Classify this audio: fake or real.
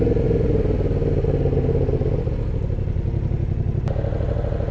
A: real